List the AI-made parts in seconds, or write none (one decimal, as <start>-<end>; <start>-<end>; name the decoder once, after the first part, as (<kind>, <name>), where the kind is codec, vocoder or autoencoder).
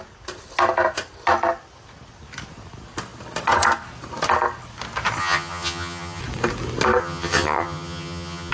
5.2-6.2 (vocoder, HiFi-GAN); 7.0-8.5